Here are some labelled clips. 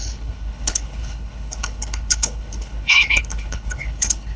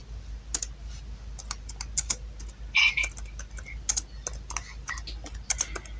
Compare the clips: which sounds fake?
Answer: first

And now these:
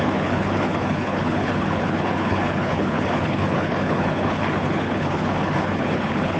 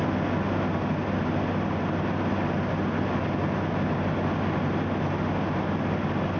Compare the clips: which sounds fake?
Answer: first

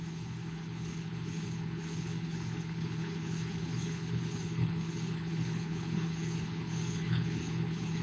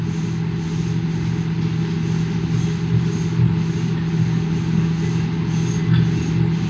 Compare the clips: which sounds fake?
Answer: first